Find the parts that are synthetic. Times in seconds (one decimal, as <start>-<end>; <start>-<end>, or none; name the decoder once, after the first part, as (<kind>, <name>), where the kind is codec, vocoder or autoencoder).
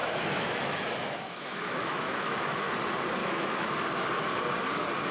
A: 0.0-2.7 (autoencoder, DAC-VAE); 3.2-3.7